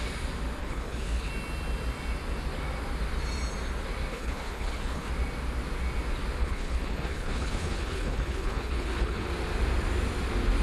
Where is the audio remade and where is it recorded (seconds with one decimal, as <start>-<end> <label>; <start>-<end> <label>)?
0.0-0.6 recorded; 0.6-1.3 remade; 1.3-4.1 recorded; 4.1-5.1 remade; 5.1-6.4 recorded; 6.4-9.3 remade; 9.3-10.6 recorded